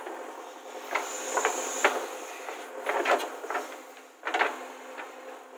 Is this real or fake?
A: real